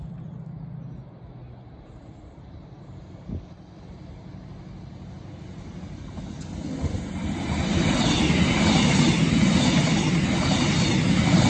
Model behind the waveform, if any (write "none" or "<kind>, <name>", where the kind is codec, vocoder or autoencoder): none